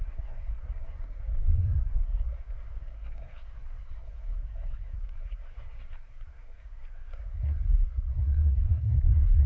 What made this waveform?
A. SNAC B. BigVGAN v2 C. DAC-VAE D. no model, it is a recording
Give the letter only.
A